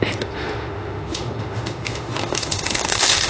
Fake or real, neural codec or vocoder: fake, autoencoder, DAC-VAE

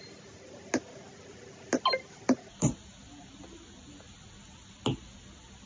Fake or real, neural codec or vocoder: real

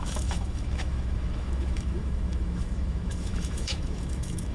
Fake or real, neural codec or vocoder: fake, autoencoder, DAC-VAE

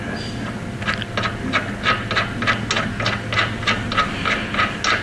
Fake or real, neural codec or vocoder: real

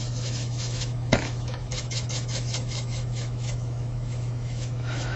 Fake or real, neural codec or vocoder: fake, autoencoder, DAC-VAE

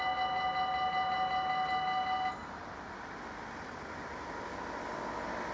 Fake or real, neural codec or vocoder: real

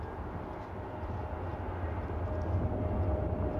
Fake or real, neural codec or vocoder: real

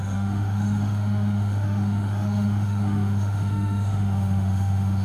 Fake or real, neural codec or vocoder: fake, autoencoder, DAC-VAE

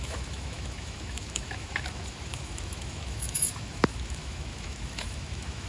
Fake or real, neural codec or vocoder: fake, autoencoder, DAC-VAE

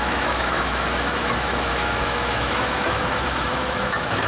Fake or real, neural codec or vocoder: fake, autoencoder, DAC-VAE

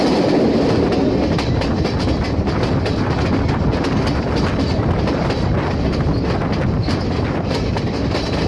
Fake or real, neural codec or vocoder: real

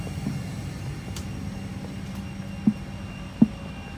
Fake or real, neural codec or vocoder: real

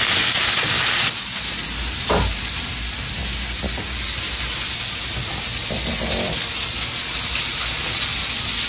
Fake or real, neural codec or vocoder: real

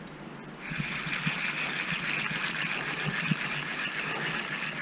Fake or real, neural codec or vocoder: real